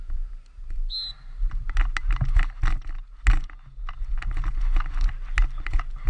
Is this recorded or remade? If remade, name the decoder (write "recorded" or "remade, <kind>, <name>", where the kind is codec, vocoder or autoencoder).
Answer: recorded